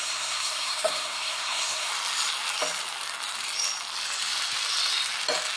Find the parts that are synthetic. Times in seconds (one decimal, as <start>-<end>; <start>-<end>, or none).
0.0-1.9